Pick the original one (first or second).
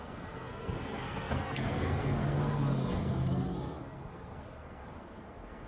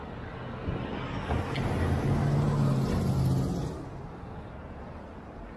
second